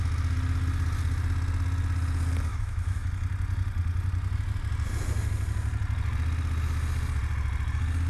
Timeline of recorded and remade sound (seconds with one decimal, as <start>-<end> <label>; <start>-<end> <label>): 0.0-2.5 recorded; 2.5-3.1 remade; 3.1-8.1 recorded